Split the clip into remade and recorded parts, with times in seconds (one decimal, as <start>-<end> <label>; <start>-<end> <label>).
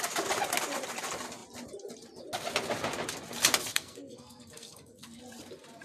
0.0-3.7 recorded; 3.7-5.2 remade; 5.2-5.8 recorded